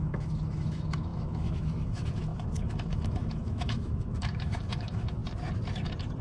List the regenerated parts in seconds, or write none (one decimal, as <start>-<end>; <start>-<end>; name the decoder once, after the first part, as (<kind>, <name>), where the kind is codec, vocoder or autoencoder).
0.0-5.2 (autoencoder, DAC-VAE)